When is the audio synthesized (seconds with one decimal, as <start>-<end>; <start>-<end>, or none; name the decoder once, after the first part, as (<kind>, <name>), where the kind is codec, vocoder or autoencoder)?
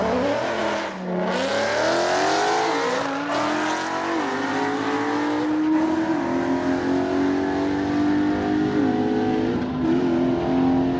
none